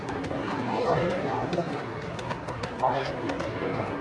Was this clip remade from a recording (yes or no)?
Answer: yes